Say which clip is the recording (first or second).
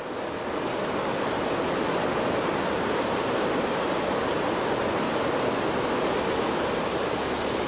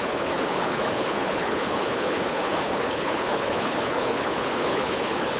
first